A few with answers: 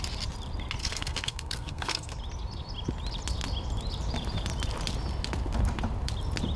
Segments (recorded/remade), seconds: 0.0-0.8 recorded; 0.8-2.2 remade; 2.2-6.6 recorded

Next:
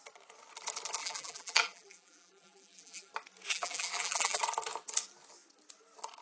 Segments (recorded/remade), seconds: 0.0-1.0 recorded; 1.0-3.1 remade; 3.1-3.5 recorded; 3.5-4.4 remade; 4.4-6.2 recorded